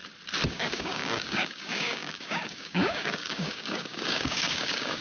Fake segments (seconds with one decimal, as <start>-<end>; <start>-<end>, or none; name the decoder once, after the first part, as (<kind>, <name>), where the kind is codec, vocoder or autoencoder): 0.5-5.0 (codec, DAC)